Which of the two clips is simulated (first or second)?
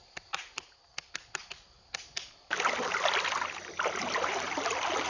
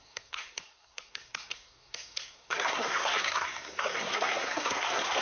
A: second